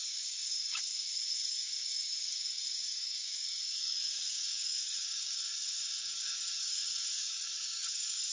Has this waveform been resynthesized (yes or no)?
yes